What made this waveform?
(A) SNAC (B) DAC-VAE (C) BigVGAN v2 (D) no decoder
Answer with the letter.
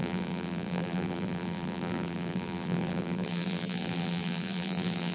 C